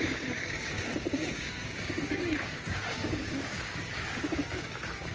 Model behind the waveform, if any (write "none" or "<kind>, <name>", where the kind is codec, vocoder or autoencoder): codec, DAC